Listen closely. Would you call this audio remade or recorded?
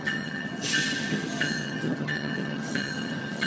remade